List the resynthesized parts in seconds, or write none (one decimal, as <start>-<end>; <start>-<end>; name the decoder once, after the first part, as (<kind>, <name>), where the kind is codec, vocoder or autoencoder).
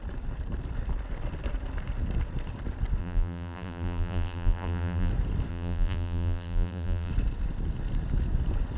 3.0-5.1 (vocoder, BigVGAN v2); 5.5-7.1